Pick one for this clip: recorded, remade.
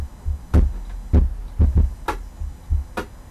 recorded